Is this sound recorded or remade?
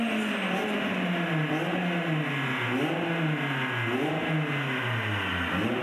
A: recorded